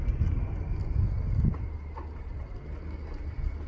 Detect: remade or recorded recorded